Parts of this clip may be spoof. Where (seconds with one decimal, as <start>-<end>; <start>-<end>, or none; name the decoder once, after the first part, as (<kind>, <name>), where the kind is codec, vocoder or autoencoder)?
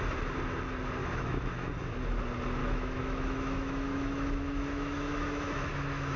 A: 1.0-1.7 (autoencoder, DAC-VAE); 2.6-6.2